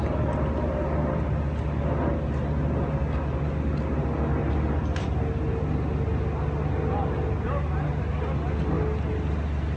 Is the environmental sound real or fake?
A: real